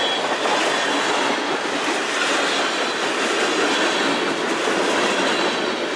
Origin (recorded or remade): recorded